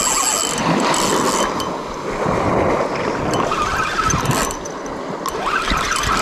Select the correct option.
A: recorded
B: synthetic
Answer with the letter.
A